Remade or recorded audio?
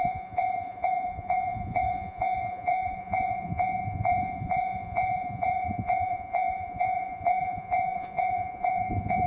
remade